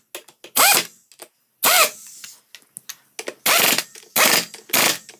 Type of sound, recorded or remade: recorded